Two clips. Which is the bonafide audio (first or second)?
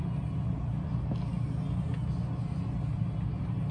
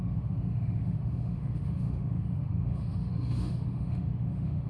first